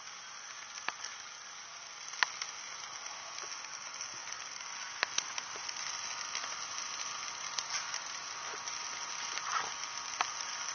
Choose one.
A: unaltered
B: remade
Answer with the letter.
A